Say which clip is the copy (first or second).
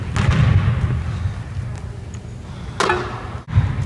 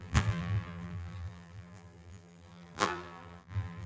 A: second